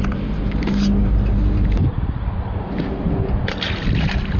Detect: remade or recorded recorded